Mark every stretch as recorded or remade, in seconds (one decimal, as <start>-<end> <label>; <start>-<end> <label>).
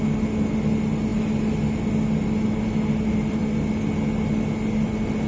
0.0-5.3 recorded